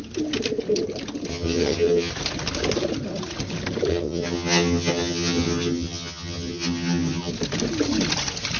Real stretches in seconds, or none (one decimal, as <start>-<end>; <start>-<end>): 0.0-1.3; 2.1-3.9; 7.3-8.6